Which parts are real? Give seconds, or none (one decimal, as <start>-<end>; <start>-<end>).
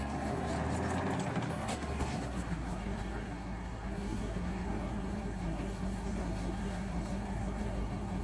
0.5-1.5